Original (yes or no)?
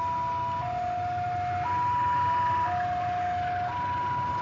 yes